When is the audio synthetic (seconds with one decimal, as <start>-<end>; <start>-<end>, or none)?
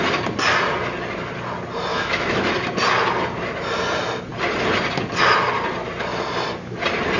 1.9-2.5